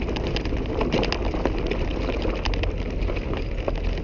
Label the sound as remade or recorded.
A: recorded